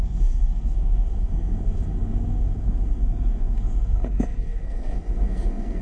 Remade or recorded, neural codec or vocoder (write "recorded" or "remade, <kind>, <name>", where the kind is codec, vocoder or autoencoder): remade, codec, SNAC